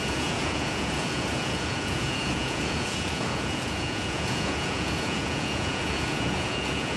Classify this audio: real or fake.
fake